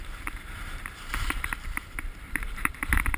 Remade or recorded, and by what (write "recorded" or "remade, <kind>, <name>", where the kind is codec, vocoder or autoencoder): remade, vocoder, BigVGAN v2